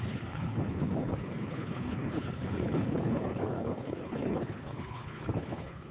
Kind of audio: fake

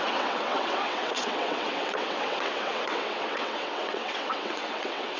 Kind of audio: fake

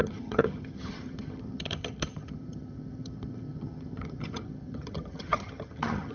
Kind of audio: fake